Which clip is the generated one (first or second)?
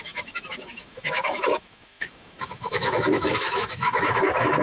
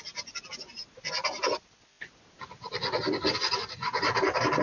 first